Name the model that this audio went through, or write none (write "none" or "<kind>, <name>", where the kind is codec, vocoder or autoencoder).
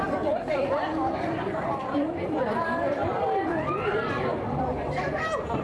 vocoder, BigVGAN v2